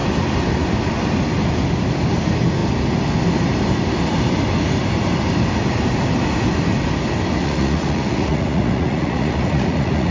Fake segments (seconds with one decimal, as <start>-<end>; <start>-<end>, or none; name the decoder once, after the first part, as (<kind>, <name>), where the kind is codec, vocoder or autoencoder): 7.4-10.1 (vocoder, Vocos)